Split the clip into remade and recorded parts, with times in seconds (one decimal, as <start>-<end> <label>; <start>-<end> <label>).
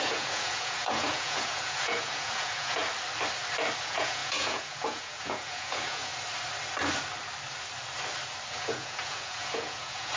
0.0-2.8 remade; 2.8-3.8 recorded; 3.8-6.1 remade; 6.1-8.5 recorded; 8.5-10.2 remade